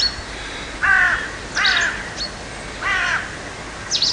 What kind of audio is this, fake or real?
real